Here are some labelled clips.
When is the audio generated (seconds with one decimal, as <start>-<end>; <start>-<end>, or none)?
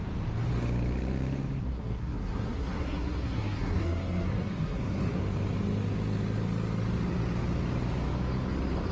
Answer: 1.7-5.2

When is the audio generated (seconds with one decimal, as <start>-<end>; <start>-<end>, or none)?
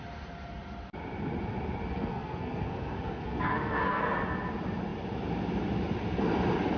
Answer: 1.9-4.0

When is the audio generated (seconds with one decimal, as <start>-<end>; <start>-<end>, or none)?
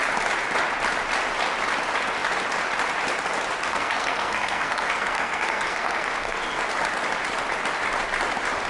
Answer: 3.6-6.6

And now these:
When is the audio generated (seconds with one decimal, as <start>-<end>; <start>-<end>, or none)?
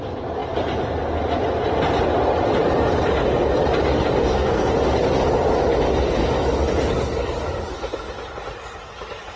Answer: 4.2-4.7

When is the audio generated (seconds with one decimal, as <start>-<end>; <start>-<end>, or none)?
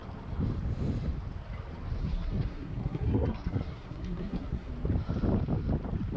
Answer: 2.0-4.7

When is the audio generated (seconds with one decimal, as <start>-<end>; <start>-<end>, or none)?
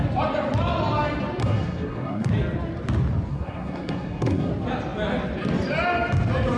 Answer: 1.4-2.3; 3.3-4.5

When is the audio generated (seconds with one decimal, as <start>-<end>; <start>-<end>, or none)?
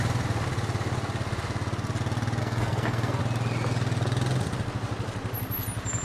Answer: 2.4-3.2